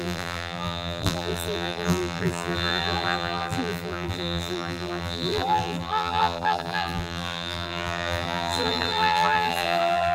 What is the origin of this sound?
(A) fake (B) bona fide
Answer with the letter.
A